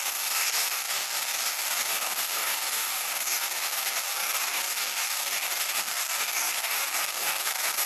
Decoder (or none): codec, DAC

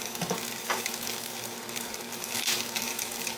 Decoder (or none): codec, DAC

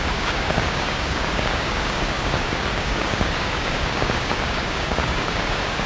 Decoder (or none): codec, DAC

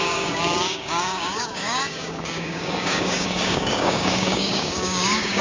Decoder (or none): codec, DAC